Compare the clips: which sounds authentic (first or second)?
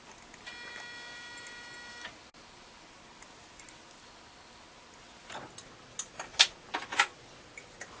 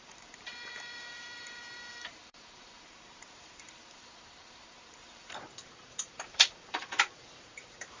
first